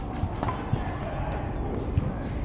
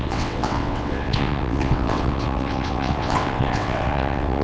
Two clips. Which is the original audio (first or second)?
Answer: first